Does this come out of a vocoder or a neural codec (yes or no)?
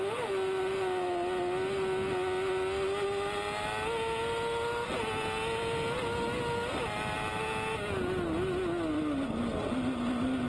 no